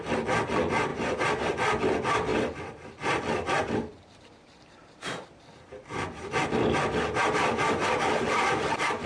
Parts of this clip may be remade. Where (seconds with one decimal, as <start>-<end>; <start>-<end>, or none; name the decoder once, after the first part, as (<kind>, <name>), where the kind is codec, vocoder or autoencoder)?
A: 0.9-1.5 (vocoder, BigVGAN v2); 2.3-3.2; 3.9-5.8